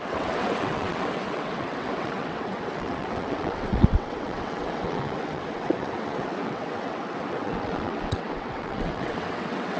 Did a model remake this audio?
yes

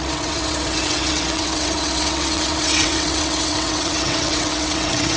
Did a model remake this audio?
yes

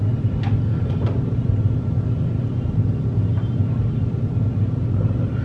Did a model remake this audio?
no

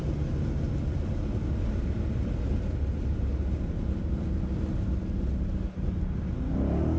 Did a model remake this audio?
no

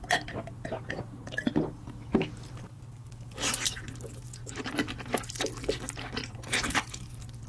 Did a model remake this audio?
no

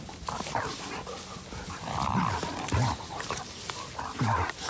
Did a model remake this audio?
no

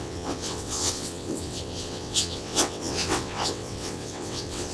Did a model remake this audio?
yes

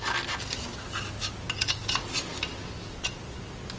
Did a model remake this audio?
no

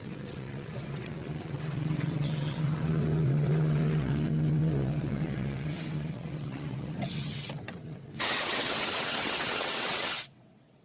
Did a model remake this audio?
yes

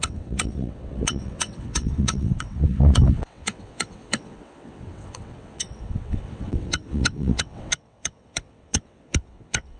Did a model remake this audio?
yes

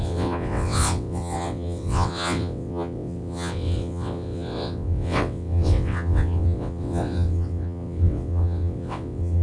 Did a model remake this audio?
yes